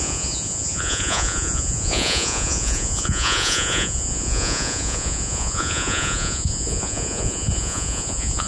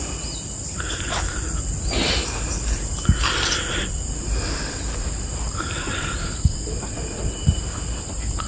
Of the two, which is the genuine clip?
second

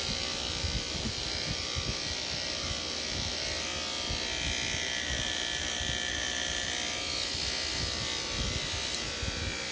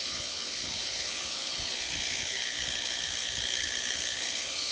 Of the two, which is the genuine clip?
first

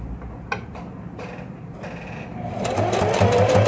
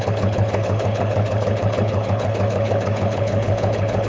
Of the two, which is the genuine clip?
first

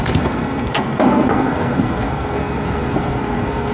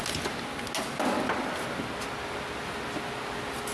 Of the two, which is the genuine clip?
second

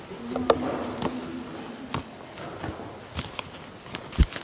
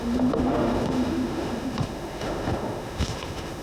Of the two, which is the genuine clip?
first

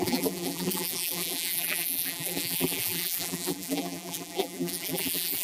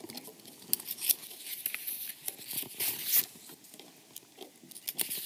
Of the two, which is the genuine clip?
second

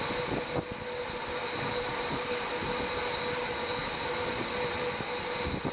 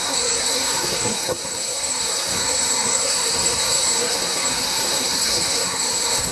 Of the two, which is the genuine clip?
first